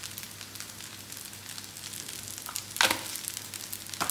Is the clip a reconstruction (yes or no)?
no